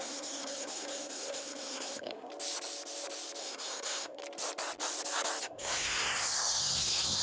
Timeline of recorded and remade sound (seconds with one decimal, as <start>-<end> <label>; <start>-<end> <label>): 0.0-2.3 remade; 2.3-3.4 recorded; 3.4-4.2 remade; 4.2-5.4 recorded; 5.4-7.2 remade